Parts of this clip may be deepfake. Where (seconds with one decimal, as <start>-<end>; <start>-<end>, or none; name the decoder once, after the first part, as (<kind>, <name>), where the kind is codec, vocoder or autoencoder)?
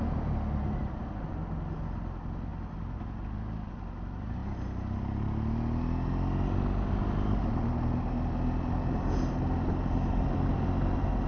none